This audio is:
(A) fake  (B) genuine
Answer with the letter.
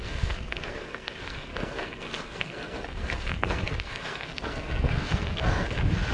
A